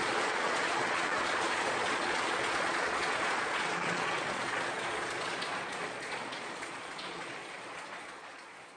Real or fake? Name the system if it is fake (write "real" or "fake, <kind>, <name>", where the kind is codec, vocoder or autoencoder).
fake, vocoder, Vocos